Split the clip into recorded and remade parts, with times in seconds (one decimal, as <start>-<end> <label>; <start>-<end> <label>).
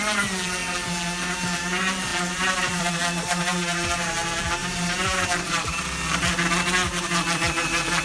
0.0-2.1 recorded; 2.1-2.9 remade; 2.9-3.5 recorded; 3.5-4.1 remade; 4.1-4.6 recorded; 4.6-5.8 remade; 5.8-8.0 recorded